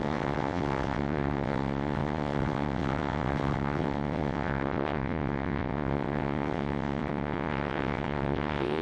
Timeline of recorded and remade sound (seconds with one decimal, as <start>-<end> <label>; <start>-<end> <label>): 0.0-8.8 remade